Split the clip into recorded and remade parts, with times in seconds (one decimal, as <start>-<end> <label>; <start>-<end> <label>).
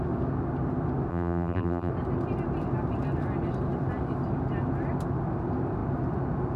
0.0-1.1 recorded; 1.1-1.9 remade; 1.9-6.6 recorded